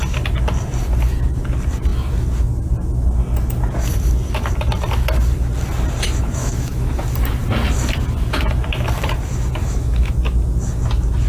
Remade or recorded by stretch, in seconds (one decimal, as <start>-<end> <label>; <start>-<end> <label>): 0.0-6.4 recorded; 6.4-6.9 remade; 6.9-9.6 recorded; 9.6-10.1 remade; 10.1-11.3 recorded